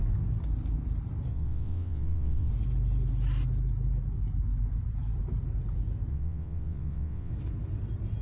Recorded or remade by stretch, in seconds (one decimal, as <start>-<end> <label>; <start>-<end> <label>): 0.0-1.3 recorded; 1.3-2.5 remade; 2.5-6.1 recorded; 6.1-7.3 remade; 7.3-8.2 recorded